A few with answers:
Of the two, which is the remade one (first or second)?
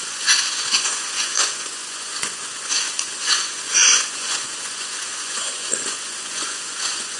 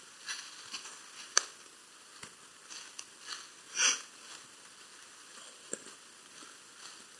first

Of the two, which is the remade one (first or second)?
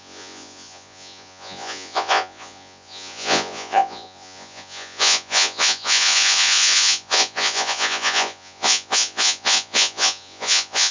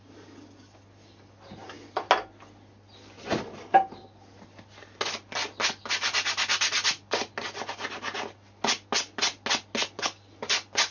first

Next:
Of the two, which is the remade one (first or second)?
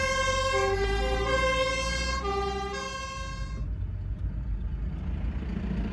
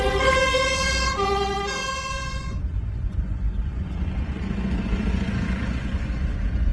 second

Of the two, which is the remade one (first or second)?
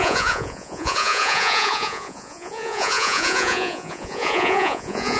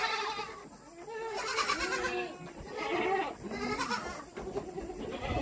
first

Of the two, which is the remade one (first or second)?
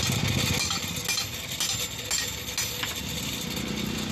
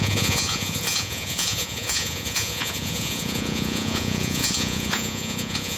second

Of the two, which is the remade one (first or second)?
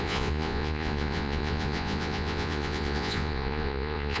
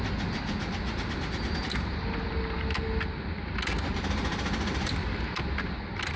first